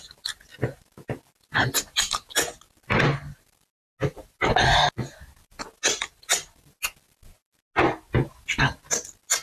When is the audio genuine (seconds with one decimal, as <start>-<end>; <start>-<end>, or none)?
0.0-9.4

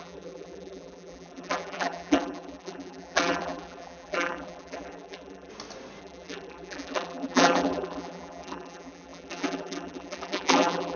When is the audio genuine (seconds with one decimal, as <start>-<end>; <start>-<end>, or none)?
5.5-6.0

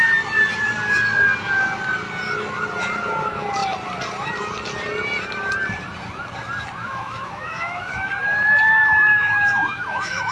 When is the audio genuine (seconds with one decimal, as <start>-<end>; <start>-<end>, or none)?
0.0-6.8; 8.1-9.1